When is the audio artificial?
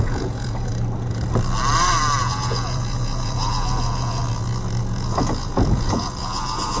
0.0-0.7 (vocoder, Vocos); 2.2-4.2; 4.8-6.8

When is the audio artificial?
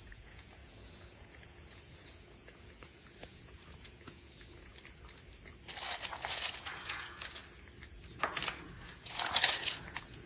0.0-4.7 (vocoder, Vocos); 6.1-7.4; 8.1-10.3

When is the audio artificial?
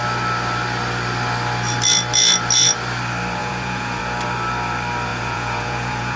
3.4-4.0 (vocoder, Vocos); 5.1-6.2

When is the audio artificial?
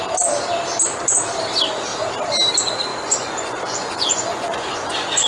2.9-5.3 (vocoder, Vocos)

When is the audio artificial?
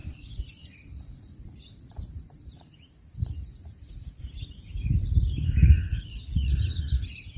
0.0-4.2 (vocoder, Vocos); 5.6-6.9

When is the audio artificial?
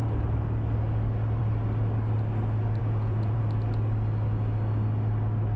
2.8-3.4 (vocoder, Vocos)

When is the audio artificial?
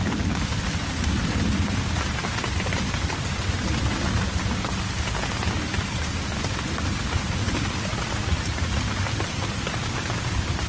7.9-8.8 (vocoder, Vocos)